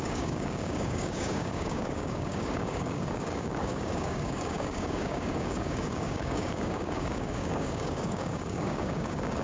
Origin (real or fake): fake